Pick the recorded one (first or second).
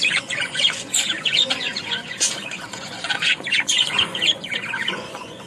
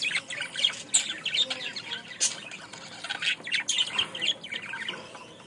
second